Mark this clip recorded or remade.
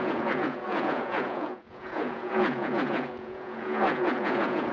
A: remade